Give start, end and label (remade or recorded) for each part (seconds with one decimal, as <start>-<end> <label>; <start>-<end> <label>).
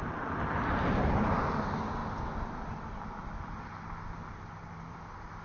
0.0-5.4 recorded